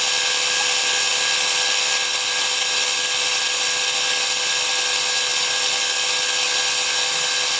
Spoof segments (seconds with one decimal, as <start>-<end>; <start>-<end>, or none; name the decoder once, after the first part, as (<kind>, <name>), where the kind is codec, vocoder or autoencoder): none